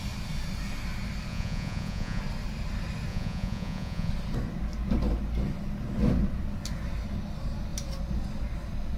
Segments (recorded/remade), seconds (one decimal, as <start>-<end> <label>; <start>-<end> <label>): 0.0-1.3 recorded; 1.3-2.2 remade; 2.2-3.1 recorded; 3.1-4.1 remade; 4.1-9.0 recorded